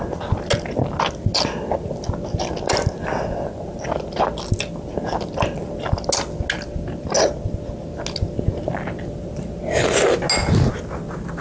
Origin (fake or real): real